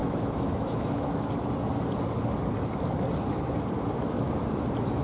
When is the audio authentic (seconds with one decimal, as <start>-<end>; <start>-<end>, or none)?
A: 1.3-5.0